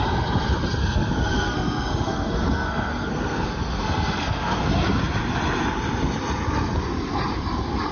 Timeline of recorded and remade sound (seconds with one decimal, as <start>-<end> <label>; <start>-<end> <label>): 0.0-0.8 recorded; 0.8-4.7 remade; 4.7-7.9 recorded